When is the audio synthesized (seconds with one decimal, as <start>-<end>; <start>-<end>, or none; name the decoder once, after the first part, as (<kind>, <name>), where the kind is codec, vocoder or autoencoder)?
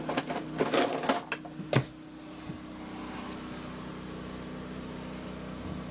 none